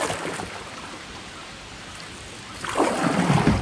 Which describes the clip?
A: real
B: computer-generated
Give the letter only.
A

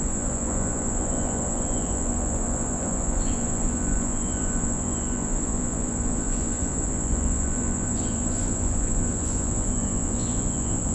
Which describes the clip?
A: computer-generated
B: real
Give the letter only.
A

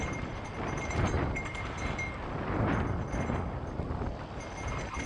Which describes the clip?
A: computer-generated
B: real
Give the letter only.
B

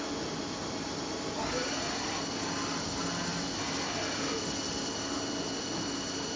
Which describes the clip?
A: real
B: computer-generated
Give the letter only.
A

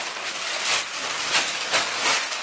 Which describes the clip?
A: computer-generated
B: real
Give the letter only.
B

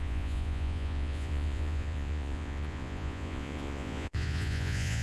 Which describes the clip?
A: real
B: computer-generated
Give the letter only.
B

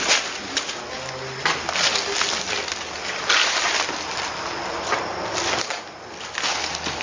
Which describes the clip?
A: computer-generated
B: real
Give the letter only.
B